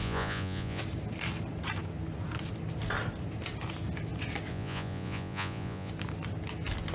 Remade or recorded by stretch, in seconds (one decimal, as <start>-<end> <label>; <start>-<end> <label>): 0.0-0.8 remade; 0.8-4.5 recorded; 4.5-5.9 remade; 5.9-6.9 recorded